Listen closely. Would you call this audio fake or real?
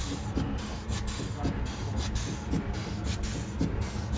real